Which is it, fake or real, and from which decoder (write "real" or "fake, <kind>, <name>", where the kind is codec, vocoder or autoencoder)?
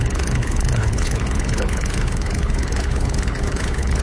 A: fake, codec, HILCodec